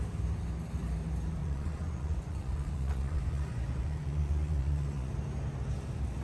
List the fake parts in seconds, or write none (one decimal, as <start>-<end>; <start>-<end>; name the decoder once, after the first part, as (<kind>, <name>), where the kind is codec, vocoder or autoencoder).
1.4-5.1 (vocoder, Vocos)